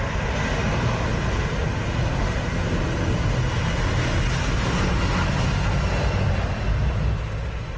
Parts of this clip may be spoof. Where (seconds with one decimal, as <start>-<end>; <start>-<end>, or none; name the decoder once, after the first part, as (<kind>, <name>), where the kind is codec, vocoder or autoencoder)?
none